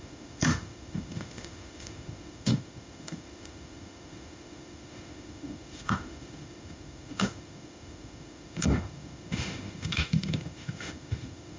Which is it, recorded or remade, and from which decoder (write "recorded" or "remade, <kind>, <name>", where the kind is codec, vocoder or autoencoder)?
remade, autoencoder, DAC-VAE